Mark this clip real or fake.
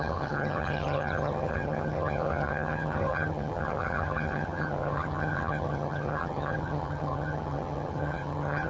fake